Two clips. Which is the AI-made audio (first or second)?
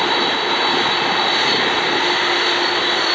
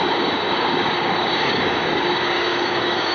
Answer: second